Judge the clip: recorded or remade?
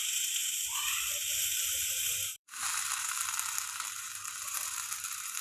remade